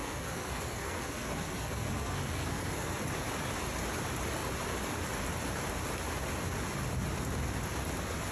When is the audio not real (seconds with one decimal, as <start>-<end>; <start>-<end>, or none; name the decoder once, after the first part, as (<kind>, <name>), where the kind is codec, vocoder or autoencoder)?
0.0-3.1 (codec, SNAC)